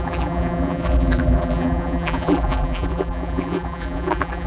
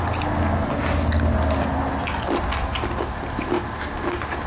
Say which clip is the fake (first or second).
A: first